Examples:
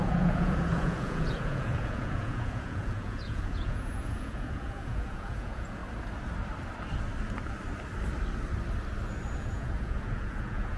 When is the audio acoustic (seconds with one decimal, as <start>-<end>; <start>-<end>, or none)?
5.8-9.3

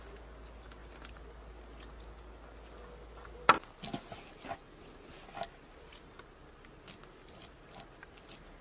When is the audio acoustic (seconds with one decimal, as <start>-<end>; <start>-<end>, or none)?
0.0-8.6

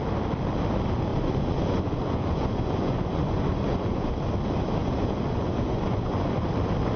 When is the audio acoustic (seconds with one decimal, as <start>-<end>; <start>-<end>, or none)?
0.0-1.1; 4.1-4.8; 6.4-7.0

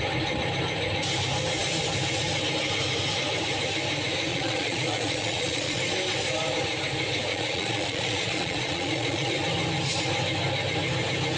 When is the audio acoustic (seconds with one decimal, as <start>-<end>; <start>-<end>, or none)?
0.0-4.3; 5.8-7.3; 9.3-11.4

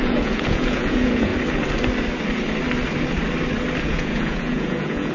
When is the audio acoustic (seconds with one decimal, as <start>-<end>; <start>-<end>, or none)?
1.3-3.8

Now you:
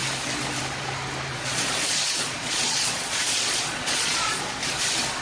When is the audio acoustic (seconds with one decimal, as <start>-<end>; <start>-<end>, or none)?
0.0-1.3; 4.4-5.2